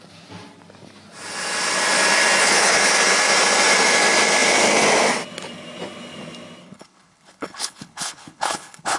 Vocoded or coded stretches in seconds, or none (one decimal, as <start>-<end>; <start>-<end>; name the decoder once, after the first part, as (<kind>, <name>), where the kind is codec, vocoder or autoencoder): 2.4-2.9 (codec, HILCodec); 6.6-9.0